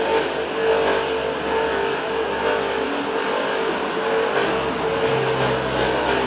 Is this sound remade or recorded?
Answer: recorded